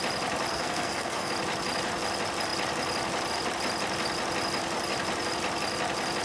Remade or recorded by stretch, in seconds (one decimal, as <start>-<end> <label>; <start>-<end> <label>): 0.0-0.5 recorded; 0.5-1.3 remade; 1.3-6.2 recorded